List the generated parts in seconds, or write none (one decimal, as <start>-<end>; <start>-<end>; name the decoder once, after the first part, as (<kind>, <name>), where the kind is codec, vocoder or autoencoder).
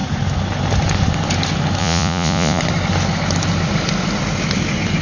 1.8-2.6 (vocoder, Vocos)